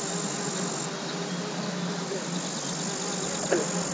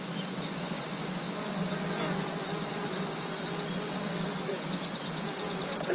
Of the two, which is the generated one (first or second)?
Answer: second